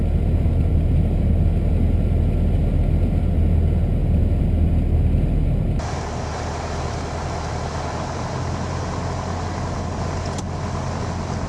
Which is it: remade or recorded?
recorded